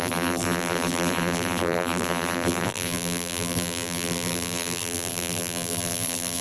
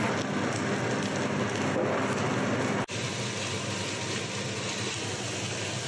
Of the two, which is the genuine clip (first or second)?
second